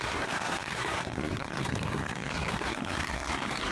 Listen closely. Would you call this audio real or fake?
fake